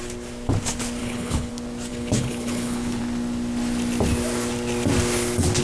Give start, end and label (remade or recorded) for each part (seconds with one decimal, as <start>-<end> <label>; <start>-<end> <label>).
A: 0.0-1.0 recorded; 1.0-1.5 remade; 1.5-1.9 recorded; 1.9-3.0 remade; 3.0-5.6 recorded